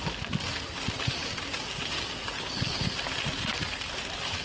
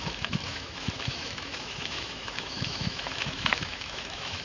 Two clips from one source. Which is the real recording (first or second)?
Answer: first